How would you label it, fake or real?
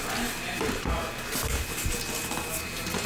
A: real